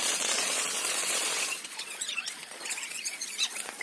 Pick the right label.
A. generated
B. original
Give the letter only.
A